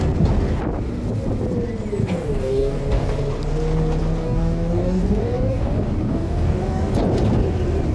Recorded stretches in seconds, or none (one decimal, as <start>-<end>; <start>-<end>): 0.0-2.0; 3.1-4.2; 6.9-7.9